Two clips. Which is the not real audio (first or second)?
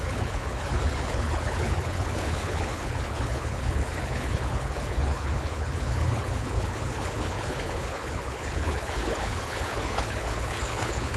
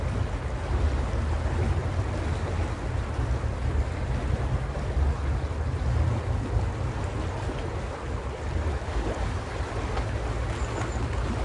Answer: first